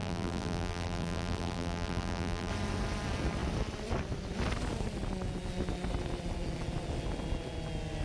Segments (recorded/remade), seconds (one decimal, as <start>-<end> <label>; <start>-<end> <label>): 0.0-2.5 remade; 2.5-8.0 recorded